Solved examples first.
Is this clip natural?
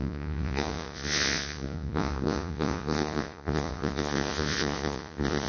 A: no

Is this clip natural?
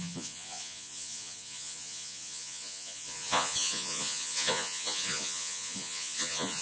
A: no